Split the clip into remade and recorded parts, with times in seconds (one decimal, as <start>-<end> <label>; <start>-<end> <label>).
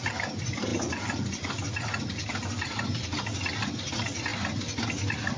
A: 0.0-5.4 recorded